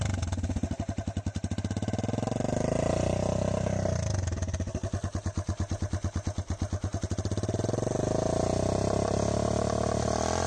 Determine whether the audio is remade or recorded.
recorded